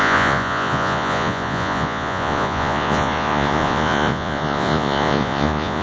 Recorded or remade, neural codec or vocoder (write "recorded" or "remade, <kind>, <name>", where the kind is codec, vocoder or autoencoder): remade, vocoder, Vocos